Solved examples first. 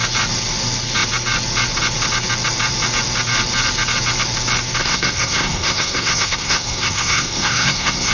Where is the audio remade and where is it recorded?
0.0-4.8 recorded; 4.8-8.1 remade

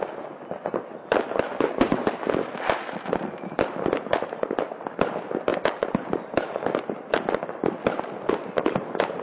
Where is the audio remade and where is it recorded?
0.0-9.2 recorded

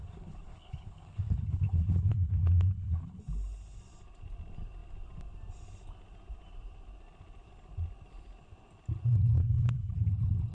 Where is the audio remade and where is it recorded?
0.0-3.2 remade; 3.2-9.4 recorded; 9.4-10.1 remade; 10.1-10.5 recorded

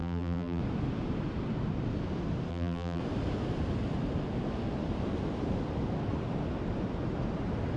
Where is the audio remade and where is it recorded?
0.0-0.6 remade; 0.6-2.5 recorded; 2.5-3.0 remade; 3.0-7.8 recorded

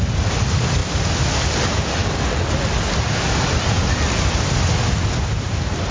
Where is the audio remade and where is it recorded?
0.0-5.9 recorded

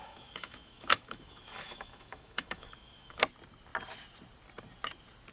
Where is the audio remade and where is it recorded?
0.0-3.2 remade; 3.2-5.3 recorded

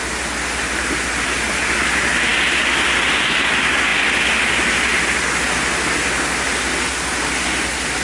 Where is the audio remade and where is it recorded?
0.0-8.0 recorded